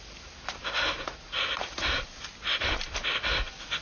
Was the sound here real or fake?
real